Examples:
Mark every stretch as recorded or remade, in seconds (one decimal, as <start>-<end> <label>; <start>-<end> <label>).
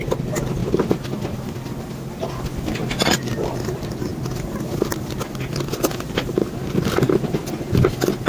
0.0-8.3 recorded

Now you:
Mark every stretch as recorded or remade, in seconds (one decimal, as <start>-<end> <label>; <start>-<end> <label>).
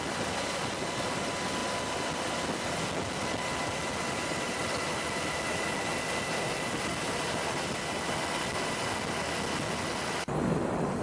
0.0-11.0 recorded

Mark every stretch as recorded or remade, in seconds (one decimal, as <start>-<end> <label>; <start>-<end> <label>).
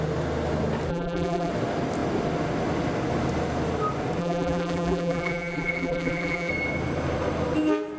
0.0-0.9 recorded; 0.9-1.5 remade; 1.5-4.2 recorded; 4.2-6.5 remade; 6.5-8.0 recorded